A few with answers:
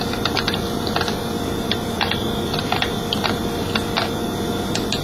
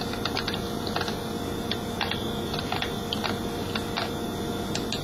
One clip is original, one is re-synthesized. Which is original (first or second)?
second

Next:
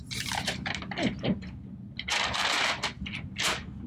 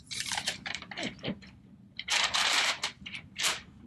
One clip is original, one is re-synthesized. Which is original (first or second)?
first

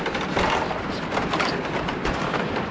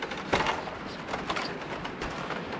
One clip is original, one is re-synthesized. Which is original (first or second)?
second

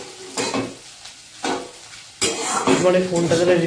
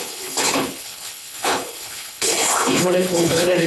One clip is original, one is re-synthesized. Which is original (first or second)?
first